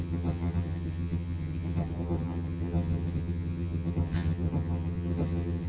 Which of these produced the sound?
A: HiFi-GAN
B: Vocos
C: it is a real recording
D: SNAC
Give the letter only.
A